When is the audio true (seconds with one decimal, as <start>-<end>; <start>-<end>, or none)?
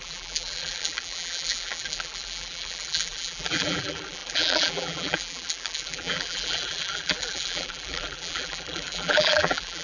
none